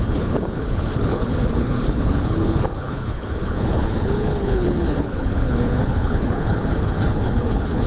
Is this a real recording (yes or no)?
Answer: no